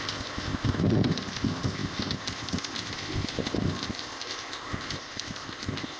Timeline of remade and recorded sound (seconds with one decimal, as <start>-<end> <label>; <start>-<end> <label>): 0.0-6.0 remade